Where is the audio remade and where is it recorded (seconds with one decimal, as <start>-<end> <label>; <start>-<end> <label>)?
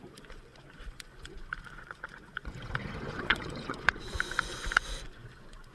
0.0-5.7 remade